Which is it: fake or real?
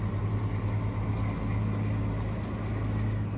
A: real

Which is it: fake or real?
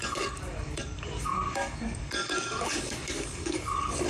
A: fake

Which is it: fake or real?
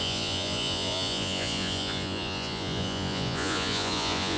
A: fake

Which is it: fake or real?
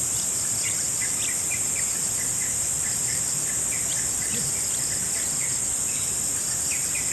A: real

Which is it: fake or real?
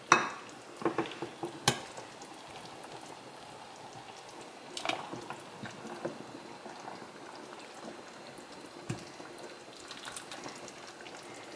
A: real